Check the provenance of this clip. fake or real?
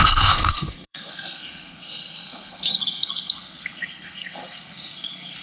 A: fake